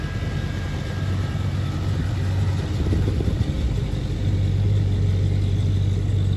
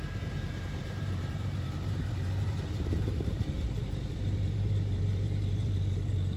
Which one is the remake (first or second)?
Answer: second